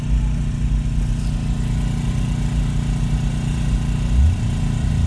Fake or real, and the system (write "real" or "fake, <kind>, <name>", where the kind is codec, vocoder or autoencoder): real